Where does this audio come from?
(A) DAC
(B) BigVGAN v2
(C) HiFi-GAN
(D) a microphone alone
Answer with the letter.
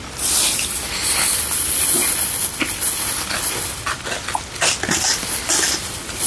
D